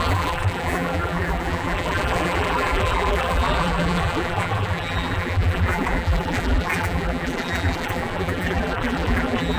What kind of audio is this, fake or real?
fake